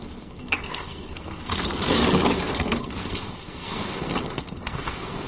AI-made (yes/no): yes